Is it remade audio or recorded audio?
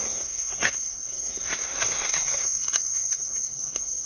remade